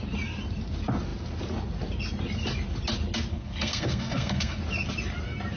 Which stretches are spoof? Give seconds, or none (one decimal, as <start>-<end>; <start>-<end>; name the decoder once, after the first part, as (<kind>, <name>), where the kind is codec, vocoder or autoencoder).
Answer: 3.3-4.6 (codec, SNAC)